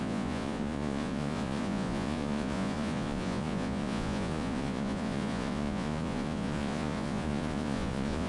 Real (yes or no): no